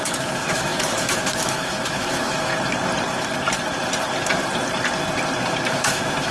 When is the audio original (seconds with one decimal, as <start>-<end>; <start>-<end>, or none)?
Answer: 2.5-5.7